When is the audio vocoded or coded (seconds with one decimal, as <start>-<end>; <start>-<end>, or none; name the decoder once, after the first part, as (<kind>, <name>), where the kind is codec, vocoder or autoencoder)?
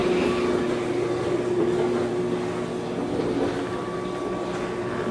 none